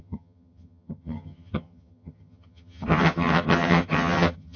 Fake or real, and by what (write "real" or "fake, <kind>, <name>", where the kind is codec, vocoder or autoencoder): fake, vocoder, HiFi-GAN